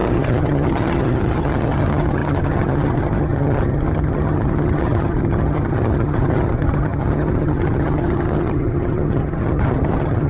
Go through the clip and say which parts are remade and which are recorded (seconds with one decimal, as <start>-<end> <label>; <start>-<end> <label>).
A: 0.0-10.3 remade